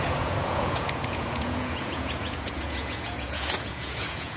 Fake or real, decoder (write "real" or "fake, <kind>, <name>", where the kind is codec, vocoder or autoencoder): fake, vocoder, Vocos